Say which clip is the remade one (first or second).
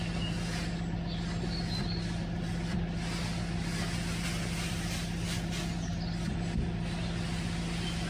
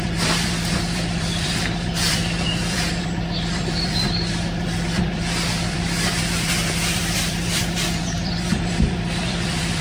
second